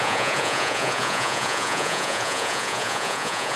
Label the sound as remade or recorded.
remade